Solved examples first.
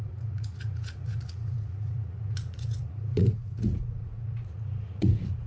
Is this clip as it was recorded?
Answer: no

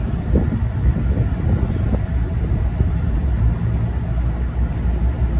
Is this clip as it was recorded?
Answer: yes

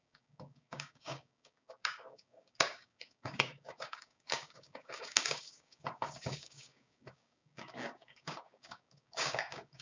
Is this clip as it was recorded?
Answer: no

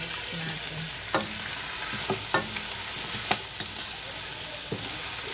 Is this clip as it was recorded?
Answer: yes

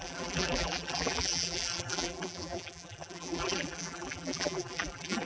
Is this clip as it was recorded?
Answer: no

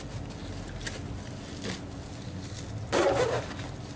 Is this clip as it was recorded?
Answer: yes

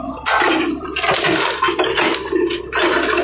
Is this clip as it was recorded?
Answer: yes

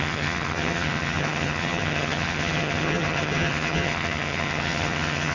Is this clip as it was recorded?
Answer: no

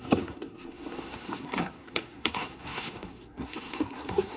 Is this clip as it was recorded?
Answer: no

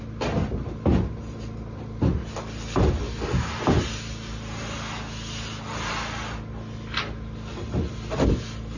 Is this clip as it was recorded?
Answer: yes